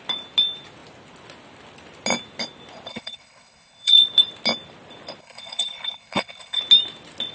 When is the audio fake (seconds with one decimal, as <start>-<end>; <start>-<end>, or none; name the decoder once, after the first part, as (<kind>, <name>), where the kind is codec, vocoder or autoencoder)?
2.9-4.0 (codec, HILCodec); 5.2-6.6

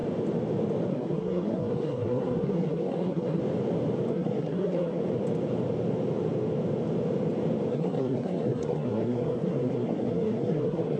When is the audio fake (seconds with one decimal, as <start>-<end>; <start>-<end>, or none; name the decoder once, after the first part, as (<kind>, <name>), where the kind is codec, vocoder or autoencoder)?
0.9-3.4 (codec, SNAC); 4.1-5.0; 7.7-11.0

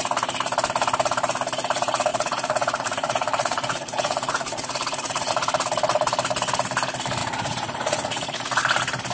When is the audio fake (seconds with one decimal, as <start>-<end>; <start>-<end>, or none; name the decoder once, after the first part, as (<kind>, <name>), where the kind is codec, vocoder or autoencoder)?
2.1-5.3 (vocoder, Vocos); 7.2-8.6

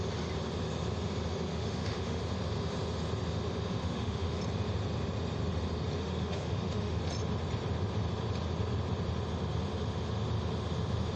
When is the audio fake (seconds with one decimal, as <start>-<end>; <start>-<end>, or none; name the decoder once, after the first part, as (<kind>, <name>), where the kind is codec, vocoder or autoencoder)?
1.5-2.2 (autoencoder, DAC-VAE); 3.8-4.4; 6.0-7.0

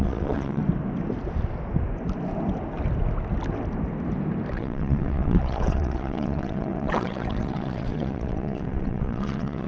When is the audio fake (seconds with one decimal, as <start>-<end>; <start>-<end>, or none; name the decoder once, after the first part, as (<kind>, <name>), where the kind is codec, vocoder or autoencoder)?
0.0-0.6 (vocoder, WaveNeXt); 4.5-9.7

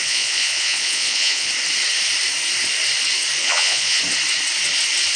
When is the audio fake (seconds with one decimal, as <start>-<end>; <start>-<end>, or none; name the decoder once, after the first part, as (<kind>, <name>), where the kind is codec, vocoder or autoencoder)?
0.0-1.5 (vocoder, Vocos); 3.4-4.0